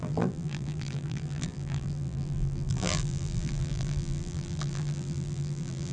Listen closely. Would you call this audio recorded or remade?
remade